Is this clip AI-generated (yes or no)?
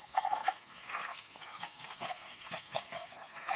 yes